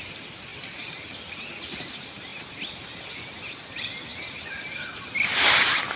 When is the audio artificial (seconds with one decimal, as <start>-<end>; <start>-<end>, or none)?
none